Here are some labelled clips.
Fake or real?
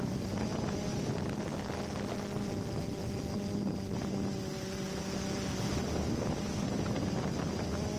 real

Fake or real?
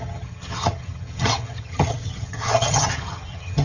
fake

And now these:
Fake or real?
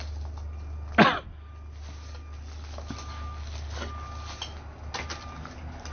real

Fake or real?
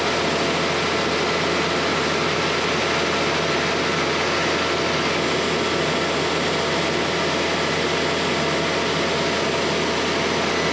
real